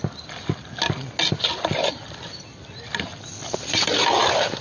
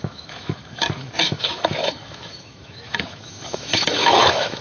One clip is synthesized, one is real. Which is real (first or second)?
first